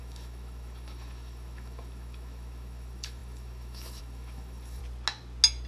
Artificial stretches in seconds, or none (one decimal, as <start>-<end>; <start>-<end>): 0.0-4.8

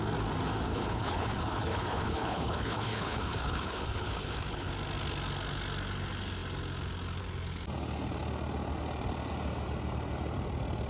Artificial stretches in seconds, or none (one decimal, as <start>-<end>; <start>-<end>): 0.7-4.7

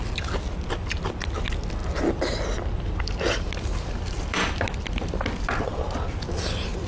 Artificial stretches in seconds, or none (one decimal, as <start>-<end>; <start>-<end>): none

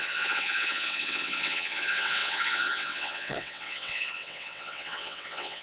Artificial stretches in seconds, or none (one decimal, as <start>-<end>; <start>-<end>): 0.0-5.6

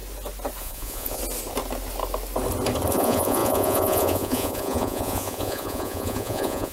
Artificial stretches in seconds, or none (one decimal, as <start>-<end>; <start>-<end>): 0.6-1.2; 2.9-6.7